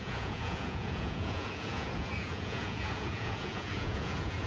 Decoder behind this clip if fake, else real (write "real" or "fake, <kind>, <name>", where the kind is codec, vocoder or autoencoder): fake, vocoder, Vocos